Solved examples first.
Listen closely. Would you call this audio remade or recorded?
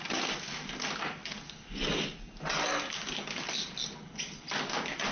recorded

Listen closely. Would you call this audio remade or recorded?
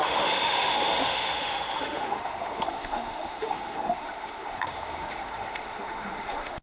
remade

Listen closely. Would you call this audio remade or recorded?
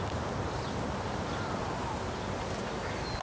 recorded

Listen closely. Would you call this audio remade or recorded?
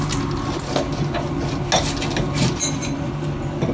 recorded